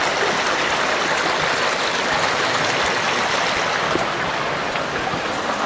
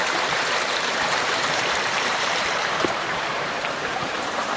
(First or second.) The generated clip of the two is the second